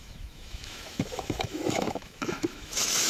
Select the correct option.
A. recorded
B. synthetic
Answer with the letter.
B